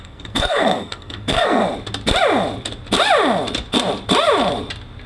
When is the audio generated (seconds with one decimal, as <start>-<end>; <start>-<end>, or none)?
0.0-1.6